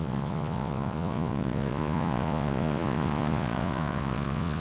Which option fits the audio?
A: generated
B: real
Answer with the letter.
A